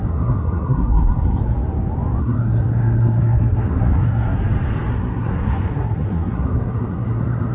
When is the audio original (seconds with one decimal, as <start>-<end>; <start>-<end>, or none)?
1.4-2.2; 4.4-4.9